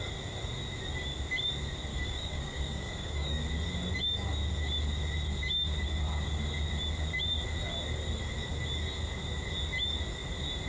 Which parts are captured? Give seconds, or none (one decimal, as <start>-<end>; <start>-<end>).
0.0-1.9; 3.4-10.7